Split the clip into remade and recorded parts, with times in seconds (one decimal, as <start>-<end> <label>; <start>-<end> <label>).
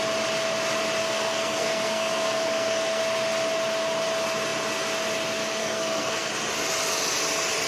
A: 0.0-1.0 recorded; 1.0-3.0 remade; 3.0-5.6 recorded; 5.6-6.3 remade; 6.3-7.7 recorded